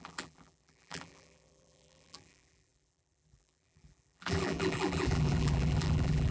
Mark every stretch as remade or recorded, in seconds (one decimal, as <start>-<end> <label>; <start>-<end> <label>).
0.0-6.3 remade